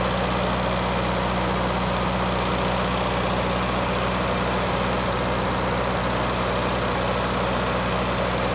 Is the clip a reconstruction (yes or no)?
no